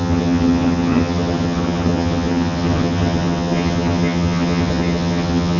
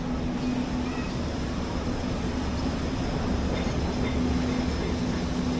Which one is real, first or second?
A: second